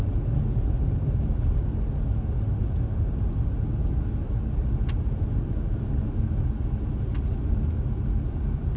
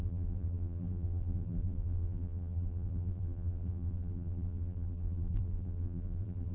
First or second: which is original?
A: first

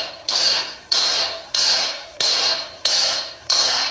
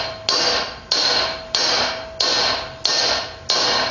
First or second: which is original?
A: second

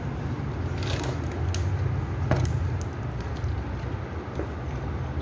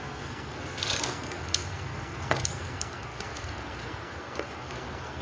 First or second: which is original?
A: first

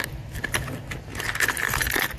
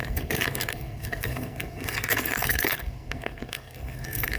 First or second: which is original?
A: first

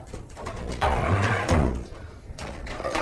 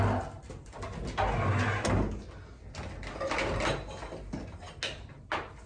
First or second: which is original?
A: second